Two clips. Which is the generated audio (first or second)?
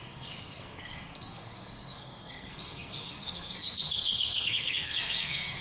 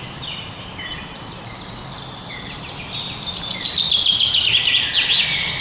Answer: first